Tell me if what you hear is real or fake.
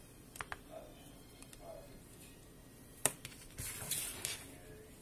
real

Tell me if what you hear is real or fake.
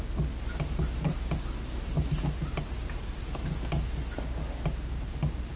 real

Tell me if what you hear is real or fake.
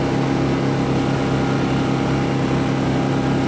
real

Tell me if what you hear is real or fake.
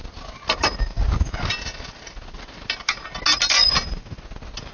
real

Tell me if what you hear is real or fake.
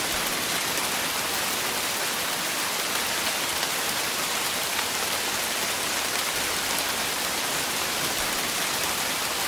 real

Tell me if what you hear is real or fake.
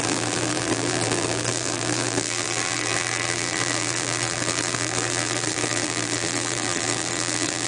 fake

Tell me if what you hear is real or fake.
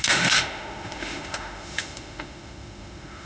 fake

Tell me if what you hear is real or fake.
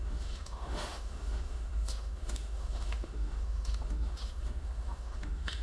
fake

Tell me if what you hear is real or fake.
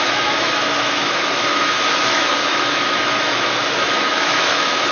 fake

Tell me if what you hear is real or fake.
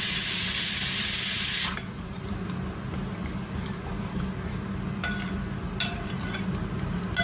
real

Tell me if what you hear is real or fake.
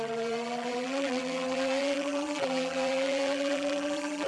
fake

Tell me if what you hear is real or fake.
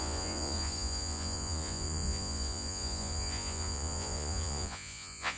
fake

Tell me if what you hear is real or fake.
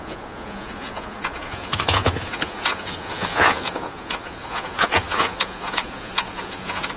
fake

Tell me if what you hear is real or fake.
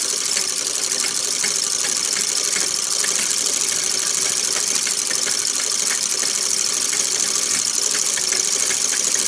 real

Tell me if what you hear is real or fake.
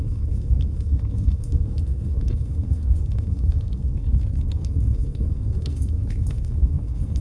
fake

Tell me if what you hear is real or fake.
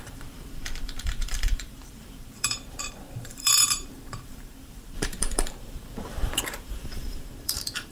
fake